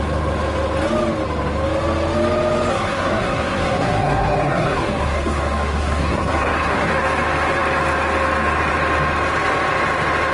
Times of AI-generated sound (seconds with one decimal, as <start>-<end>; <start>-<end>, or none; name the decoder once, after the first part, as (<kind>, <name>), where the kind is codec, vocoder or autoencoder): 2.7-6.9 (codec, SNAC)

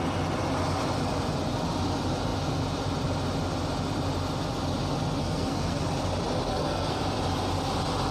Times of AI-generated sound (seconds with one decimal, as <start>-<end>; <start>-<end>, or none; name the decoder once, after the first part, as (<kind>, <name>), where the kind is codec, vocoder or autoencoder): 5.2-5.8 (codec, SNAC); 6.5-7.0

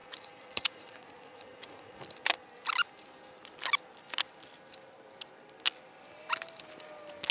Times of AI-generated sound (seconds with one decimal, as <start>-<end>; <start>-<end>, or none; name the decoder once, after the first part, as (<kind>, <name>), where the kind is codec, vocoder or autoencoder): 0.0-2.0 (vocoder, Vocos)

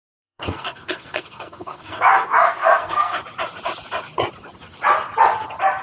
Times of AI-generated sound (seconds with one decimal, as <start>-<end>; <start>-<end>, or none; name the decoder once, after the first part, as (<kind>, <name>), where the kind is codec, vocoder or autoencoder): 0.0-3.2 (codec, SNAC)

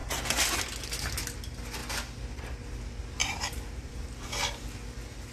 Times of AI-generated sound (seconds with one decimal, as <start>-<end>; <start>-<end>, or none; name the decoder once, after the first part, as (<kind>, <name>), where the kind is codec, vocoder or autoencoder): 3.2-3.9 (vocoder, BigVGAN v2)

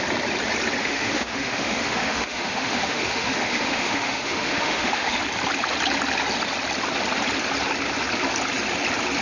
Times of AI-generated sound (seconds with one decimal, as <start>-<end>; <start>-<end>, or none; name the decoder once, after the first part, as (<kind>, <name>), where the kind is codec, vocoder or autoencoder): 0.8-5.2 (autoencoder, DAC-VAE)

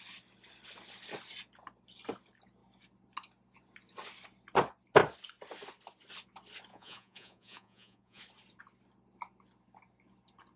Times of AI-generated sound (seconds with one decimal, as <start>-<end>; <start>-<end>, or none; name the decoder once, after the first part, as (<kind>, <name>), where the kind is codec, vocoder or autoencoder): 6.7-8.2 (vocoder, Vocos)

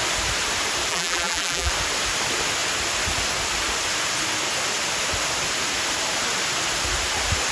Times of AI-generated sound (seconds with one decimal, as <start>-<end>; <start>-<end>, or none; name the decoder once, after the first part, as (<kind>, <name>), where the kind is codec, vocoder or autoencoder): 0.9-1.7 (vocoder, BigVGAN v2)